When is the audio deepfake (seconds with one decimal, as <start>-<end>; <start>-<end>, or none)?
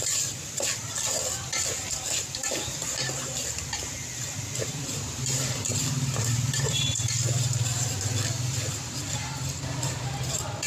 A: 0.0-10.7